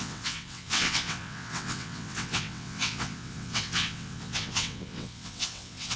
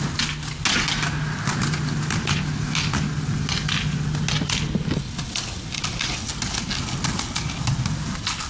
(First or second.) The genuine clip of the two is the second